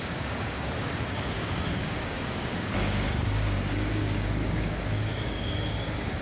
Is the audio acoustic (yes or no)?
no